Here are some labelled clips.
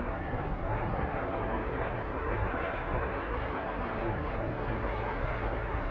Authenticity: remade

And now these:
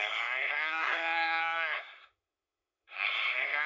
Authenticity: remade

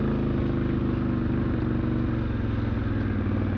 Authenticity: recorded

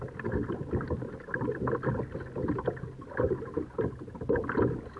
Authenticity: recorded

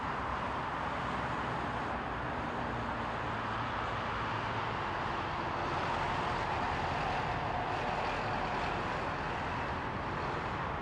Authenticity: recorded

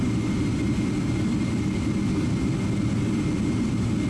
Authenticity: recorded